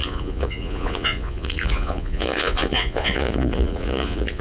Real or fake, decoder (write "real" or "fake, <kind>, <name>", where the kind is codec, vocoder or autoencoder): fake, vocoder, Vocos